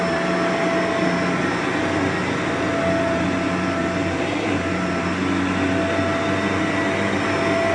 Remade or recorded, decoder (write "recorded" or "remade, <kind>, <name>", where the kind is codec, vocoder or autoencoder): recorded